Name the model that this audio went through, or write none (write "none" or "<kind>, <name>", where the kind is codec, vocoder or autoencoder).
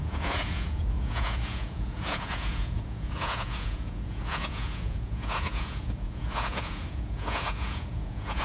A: vocoder, Vocos